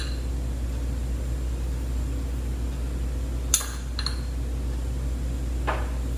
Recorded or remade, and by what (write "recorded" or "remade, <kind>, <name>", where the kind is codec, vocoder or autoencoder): recorded